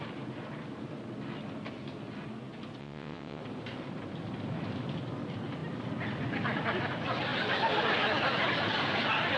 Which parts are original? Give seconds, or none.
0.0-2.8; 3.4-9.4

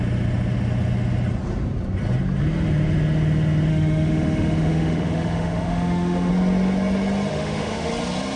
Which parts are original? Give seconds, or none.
0.0-3.7; 6.3-7.3; 7.9-8.4

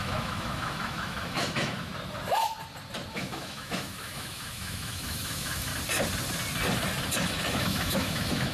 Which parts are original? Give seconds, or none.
1.9-3.1; 5.7-7.5